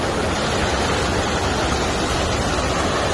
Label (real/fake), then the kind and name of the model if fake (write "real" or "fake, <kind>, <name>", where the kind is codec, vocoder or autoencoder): real